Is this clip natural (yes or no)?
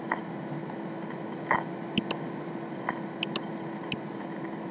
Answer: yes